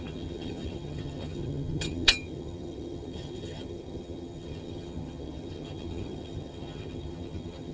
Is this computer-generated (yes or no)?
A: yes